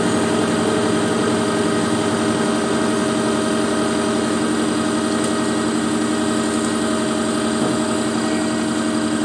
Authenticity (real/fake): real